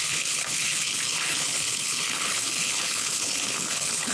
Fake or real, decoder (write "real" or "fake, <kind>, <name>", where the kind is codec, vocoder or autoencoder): fake, codec, HILCodec